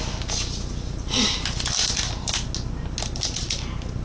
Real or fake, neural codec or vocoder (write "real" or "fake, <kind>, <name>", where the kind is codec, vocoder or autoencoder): real